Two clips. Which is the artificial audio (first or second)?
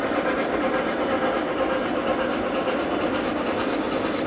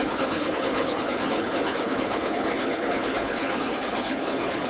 second